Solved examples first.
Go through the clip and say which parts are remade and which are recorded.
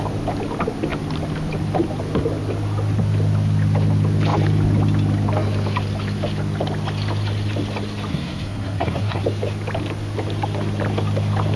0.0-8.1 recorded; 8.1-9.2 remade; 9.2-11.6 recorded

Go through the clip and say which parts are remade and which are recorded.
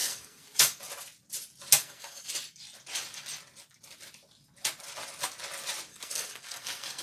0.0-0.8 remade; 0.8-1.8 recorded; 1.8-2.3 remade; 2.3-5.9 recorded; 5.9-7.0 remade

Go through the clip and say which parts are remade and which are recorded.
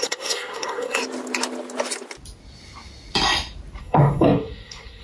0.0-1.0 remade; 1.0-3.8 recorded; 3.8-5.0 remade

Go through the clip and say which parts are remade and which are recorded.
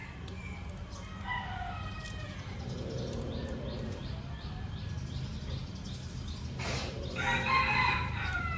0.0-8.6 recorded